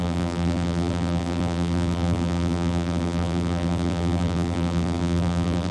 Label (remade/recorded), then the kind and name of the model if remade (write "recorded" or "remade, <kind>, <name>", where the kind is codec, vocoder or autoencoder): remade, vocoder, BigVGAN v2